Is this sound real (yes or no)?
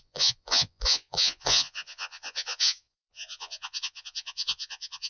no